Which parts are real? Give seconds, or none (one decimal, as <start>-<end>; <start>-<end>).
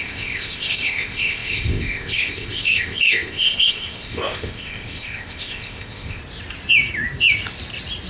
6.2-8.1